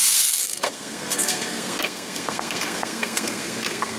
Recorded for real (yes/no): no